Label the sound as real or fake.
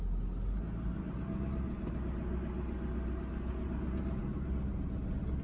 real